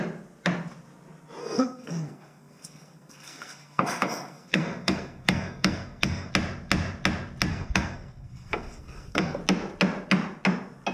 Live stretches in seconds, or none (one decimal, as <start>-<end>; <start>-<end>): 0.0-1.4; 6.3-7.5; 9.4-10.9